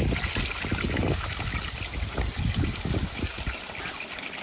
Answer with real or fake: real